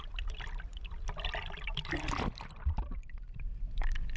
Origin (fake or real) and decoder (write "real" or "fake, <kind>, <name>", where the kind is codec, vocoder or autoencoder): fake, vocoder, BigVGAN v2